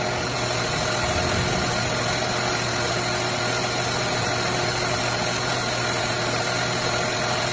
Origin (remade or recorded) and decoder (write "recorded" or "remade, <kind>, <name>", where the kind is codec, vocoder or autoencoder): recorded